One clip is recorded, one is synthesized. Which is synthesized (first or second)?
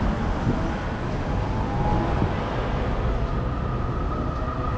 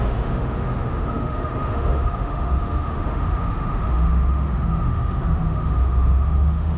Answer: second